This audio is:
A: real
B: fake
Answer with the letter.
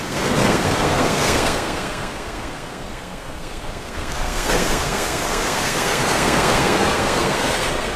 B